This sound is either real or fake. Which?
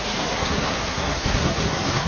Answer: fake